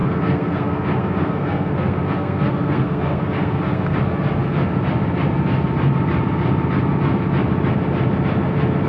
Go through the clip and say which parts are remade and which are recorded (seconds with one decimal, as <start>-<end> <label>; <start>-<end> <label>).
0.0-4.0 remade; 4.0-8.9 recorded